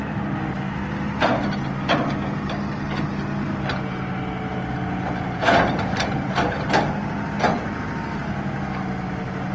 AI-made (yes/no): no